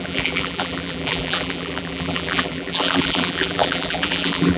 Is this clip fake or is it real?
fake